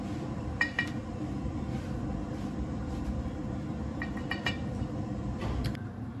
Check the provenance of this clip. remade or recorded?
remade